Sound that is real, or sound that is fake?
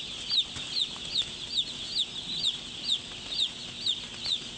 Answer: real